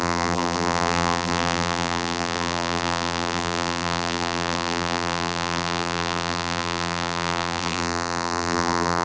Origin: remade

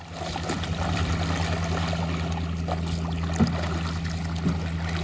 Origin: recorded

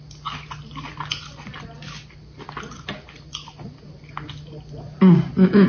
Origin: recorded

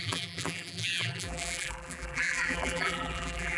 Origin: remade